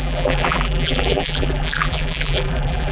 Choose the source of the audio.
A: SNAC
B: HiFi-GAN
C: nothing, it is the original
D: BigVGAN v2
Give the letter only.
D